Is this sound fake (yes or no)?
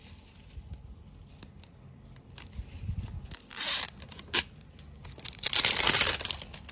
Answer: no